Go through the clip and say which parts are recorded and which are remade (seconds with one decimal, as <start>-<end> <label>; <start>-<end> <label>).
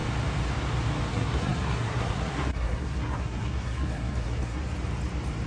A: 0.0-1.1 recorded; 1.1-4.6 remade; 4.6-5.5 recorded